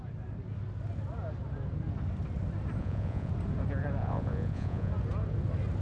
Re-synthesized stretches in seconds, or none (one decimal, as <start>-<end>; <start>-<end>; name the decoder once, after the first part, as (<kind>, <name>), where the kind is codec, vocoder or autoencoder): 2.8-3.3 (vocoder, Vocos); 4.0-4.9